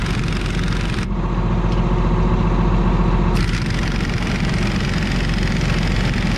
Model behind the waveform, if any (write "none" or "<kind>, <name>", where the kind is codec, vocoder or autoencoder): none